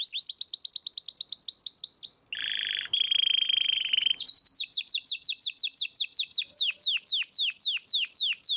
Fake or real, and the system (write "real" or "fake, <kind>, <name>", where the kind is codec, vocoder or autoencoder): real